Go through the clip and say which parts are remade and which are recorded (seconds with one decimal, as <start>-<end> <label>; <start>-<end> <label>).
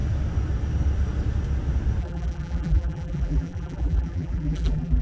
0.0-2.0 recorded; 2.0-5.0 remade